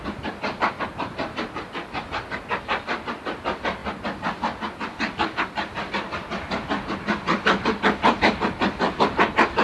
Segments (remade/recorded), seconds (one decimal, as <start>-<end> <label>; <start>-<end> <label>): 0.0-3.8 remade; 3.8-5.9 recorded; 5.9-9.6 remade